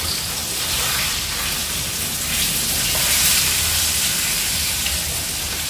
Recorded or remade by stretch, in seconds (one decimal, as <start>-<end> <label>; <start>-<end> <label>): 0.0-5.7 recorded